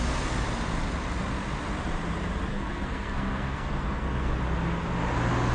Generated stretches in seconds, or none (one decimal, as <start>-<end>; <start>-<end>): 2.5-4.3